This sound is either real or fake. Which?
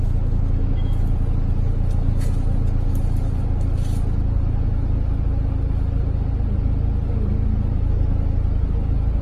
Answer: real